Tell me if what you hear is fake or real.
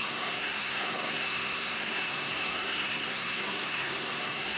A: fake